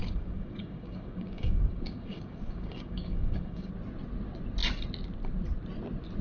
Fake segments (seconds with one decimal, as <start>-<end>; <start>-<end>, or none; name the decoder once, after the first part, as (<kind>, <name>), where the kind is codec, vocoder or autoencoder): 0.0-3.7 (codec, DAC)